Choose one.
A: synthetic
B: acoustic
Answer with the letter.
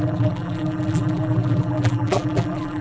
A